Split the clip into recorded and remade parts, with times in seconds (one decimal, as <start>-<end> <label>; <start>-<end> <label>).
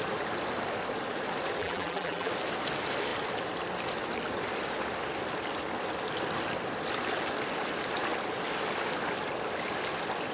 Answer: 0.0-1.6 recorded; 1.6-2.3 remade; 2.3-10.3 recorded